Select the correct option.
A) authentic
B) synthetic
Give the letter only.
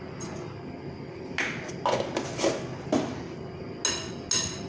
A